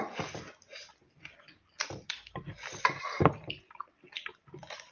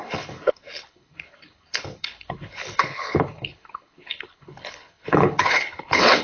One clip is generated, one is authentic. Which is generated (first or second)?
second